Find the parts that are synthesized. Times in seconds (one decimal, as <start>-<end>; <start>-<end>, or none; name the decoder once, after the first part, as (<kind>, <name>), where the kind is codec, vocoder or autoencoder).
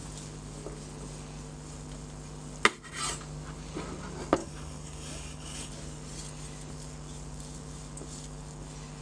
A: 4.4-5.7 (codec, DAC)